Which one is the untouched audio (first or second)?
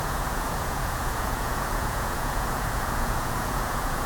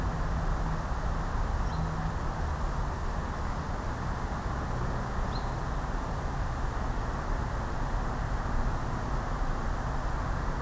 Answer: second